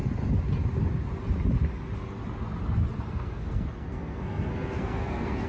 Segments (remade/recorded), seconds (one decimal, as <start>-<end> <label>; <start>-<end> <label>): 0.0-3.1 recorded; 3.1-5.5 remade